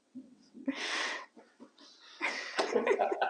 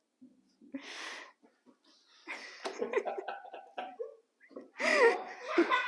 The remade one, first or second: first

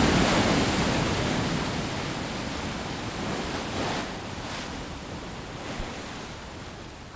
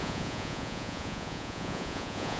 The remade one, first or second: second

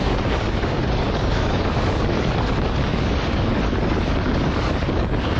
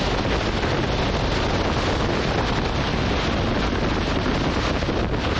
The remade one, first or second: first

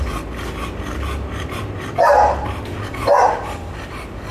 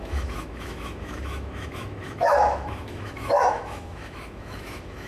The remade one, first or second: second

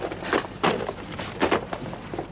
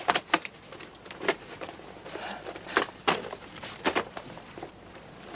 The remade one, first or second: second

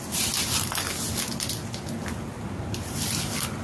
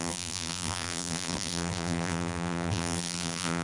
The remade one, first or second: second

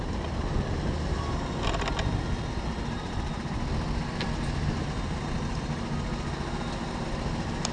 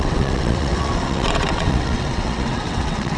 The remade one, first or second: second